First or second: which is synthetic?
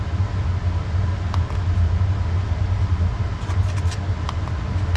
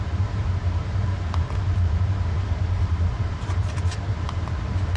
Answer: second